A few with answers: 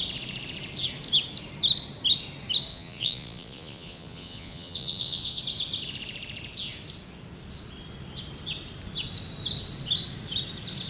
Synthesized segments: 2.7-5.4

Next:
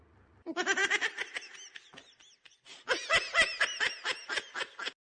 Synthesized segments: none